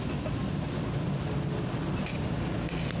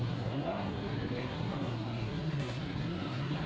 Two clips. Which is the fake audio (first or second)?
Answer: second